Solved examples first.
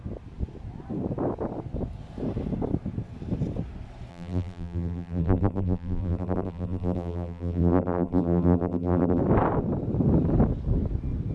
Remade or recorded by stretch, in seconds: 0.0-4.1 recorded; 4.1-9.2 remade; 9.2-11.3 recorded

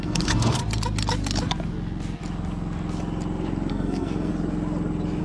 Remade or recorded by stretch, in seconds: 0.0-0.6 remade; 0.6-3.7 recorded; 3.7-4.3 remade; 4.3-5.2 recorded

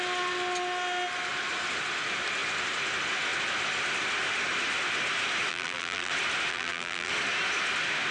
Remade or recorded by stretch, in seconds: 0.0-5.5 recorded; 5.5-6.1 remade; 6.1-6.5 recorded; 6.5-7.1 remade; 7.1-8.1 recorded

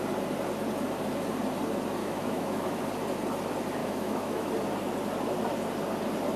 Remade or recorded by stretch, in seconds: 0.0-2.0 recorded; 2.0-2.8 remade; 2.8-3.8 recorded; 3.8-4.5 remade; 4.5-6.4 recorded

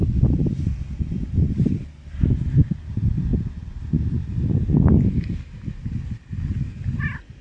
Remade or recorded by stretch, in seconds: 0.0-7.4 recorded